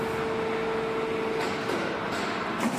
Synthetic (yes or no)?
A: no